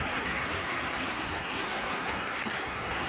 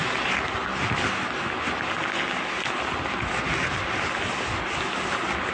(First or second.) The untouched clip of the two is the second